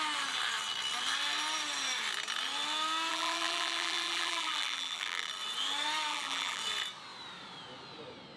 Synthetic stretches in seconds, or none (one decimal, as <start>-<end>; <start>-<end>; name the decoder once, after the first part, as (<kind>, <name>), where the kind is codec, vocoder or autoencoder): 3.1-5.3 (vocoder, BigVGAN v2); 6.1-6.6